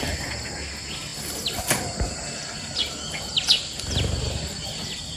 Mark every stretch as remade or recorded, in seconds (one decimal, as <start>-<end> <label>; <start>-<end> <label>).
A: 0.0-5.2 recorded